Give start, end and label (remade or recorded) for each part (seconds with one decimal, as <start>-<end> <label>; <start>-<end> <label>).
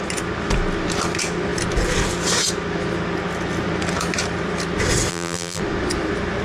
0.0-5.1 recorded; 5.1-5.6 remade; 5.6-6.4 recorded